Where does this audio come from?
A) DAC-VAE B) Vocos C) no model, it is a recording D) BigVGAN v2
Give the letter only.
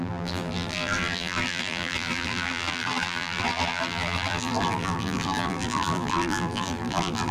D